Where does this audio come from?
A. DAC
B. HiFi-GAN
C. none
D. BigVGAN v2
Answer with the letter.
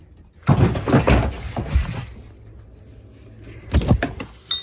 C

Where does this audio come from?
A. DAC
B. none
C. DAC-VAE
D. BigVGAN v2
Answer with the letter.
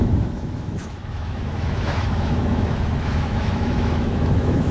C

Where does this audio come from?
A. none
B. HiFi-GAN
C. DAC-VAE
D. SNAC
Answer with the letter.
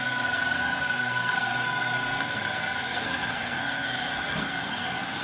D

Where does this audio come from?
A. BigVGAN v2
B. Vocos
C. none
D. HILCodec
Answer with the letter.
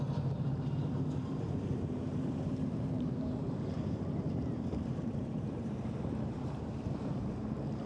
A